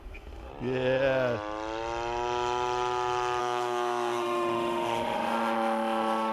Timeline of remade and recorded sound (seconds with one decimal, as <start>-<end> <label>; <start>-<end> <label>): 0.0-0.5 remade; 0.5-3.4 recorded; 3.4-6.3 remade